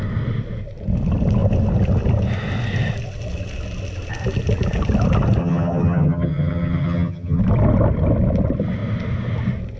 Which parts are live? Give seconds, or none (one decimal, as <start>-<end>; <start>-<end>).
0.0-5.4; 7.4-9.8